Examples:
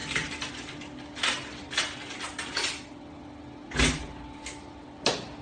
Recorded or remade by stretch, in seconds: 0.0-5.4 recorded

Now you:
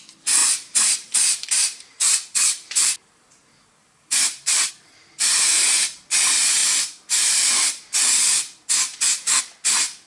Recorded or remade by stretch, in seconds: 0.0-0.4 recorded; 0.4-4.7 remade; 4.7-6.6 recorded; 6.6-9.4 remade; 9.4-10.1 recorded

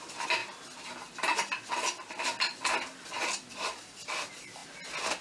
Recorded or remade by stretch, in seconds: 0.0-5.2 recorded

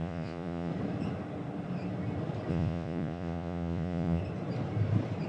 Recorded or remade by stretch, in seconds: 0.0-0.7 remade; 0.7-2.5 recorded; 2.5-4.2 remade; 4.2-5.3 recorded

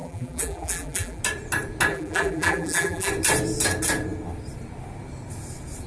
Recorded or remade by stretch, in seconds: 0.0-1.2 remade; 1.2-1.9 recorded; 1.9-3.1 remade; 3.1-5.9 recorded

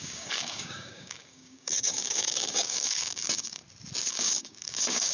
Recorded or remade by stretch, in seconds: 0.0-3.6 remade; 3.6-4.1 recorded; 4.1-5.1 remade

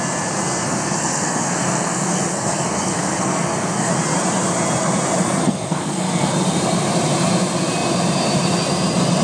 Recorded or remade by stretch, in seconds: 0.0-0.7 recorded; 0.7-3.9 remade; 3.9-5.4 recorded; 5.4-6.3 remade; 6.3-9.2 recorded

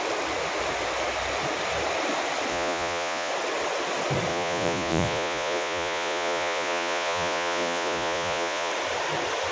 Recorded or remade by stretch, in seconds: 0.0-2.5 recorded; 2.5-3.3 remade; 3.3-4.3 recorded; 4.3-8.7 remade; 8.7-9.5 recorded